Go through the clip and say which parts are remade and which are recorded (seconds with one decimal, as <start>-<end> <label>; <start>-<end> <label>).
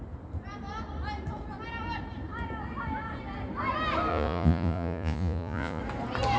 0.0-4.1 recorded; 4.1-5.8 remade; 5.8-6.4 recorded